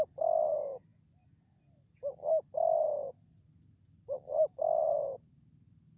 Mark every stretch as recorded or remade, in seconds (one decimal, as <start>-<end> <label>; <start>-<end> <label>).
0.0-6.0 recorded